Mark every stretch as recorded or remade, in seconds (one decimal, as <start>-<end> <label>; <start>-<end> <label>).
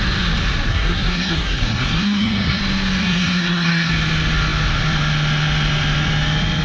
0.0-0.7 recorded; 0.7-2.6 remade; 2.6-3.0 recorded; 3.0-3.9 remade; 3.9-6.6 recorded